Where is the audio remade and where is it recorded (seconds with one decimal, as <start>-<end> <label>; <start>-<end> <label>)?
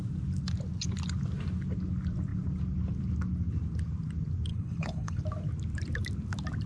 0.0-4.5 recorded; 4.5-5.2 remade; 5.2-6.7 recorded